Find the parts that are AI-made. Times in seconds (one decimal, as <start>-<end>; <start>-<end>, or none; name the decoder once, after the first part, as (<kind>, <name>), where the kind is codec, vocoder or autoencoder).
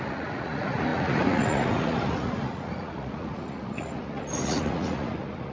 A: 0.0-5.5 (vocoder, Vocos)